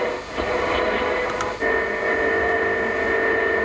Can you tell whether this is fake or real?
real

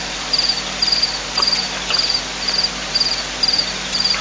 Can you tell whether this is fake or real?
real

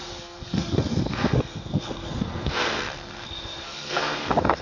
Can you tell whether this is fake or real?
fake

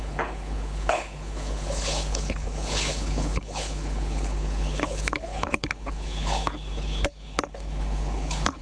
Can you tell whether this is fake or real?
fake